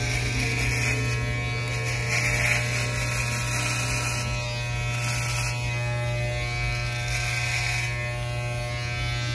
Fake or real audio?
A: real